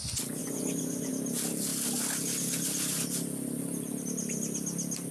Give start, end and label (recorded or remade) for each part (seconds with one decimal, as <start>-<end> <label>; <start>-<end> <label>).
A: 0.0-0.4 recorded; 0.4-1.1 remade; 1.1-5.1 recorded